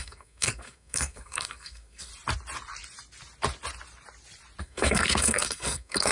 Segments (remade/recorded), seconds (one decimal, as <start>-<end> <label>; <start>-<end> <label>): 0.0-2.1 remade; 2.1-4.6 recorded; 4.6-6.1 remade